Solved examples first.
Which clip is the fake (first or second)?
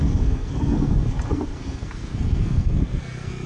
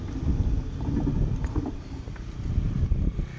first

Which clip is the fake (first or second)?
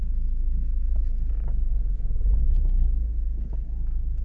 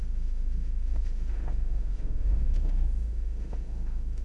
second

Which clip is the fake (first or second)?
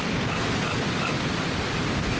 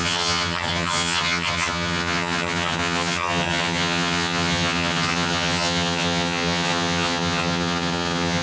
second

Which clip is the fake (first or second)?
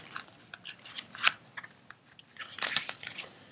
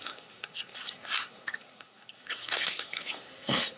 second